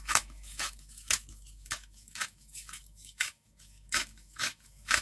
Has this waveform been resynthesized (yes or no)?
yes